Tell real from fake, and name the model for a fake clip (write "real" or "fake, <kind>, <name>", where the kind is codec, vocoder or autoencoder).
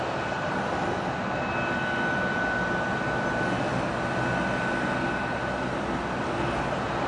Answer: real